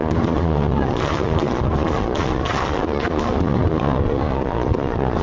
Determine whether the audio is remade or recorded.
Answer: remade